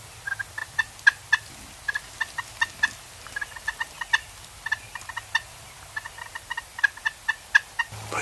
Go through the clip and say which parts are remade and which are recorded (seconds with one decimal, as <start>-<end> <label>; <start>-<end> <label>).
0.0-8.2 recorded